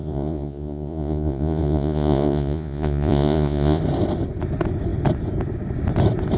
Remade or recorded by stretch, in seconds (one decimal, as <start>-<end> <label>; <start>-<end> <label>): 0.0-3.8 remade; 3.8-6.4 recorded